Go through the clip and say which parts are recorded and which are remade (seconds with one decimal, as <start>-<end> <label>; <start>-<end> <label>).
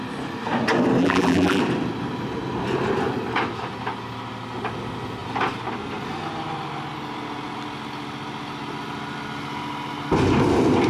0.0-1.0 recorded; 1.0-1.6 remade; 1.6-10.9 recorded